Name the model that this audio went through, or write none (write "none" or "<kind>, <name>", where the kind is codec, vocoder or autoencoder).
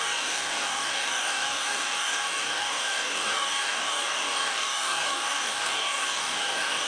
codec, DAC